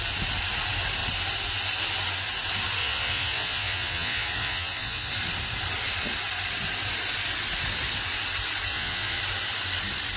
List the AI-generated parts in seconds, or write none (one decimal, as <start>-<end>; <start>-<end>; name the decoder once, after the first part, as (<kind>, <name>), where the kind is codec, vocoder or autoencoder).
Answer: 2.8-5.1 (vocoder, Vocos); 8.7-9.2